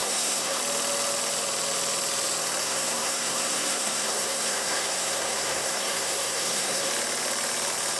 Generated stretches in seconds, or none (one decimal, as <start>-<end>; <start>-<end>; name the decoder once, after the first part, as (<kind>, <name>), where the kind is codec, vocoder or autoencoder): 0.0-0.6 (codec, SNAC); 2.6-6.9